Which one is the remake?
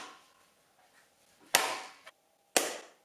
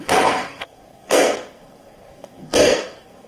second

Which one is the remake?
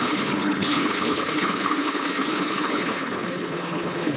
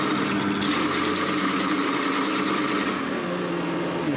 first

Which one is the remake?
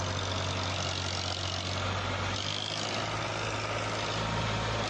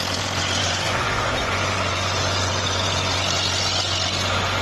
second